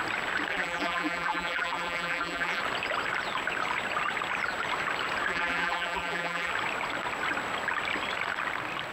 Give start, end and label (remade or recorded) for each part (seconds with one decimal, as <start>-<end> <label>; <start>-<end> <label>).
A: 0.0-0.5 recorded; 0.5-2.6 remade; 2.6-5.3 recorded; 5.3-6.5 remade; 6.5-8.9 recorded